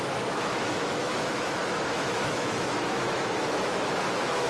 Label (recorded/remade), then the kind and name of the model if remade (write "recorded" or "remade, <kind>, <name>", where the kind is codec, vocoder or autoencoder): remade, autoencoder, DAC-VAE